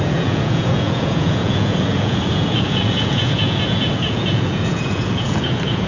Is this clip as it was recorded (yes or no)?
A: no